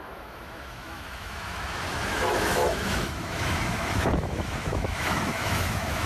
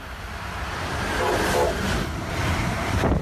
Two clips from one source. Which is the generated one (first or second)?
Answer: first